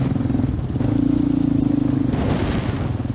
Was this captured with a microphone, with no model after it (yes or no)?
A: yes